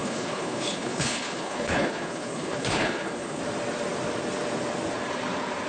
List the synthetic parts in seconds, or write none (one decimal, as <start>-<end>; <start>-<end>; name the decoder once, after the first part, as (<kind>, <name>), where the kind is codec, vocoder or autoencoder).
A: 0.0-3.4 (codec, HILCodec)

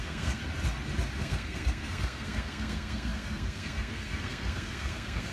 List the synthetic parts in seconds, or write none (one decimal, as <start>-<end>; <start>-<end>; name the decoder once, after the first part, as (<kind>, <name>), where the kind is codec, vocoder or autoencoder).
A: 0.0-0.4 (codec, SNAC); 1.2-5.3

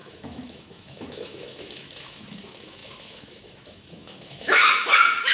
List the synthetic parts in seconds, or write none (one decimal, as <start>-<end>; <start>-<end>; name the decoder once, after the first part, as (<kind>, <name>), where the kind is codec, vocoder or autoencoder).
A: 0.0-5.3 (autoencoder, DAC-VAE)